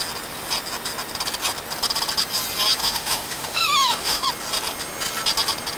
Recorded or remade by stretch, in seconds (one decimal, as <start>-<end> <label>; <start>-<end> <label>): 0.0-2.8 recorded; 2.8-4.3 remade; 4.3-5.8 recorded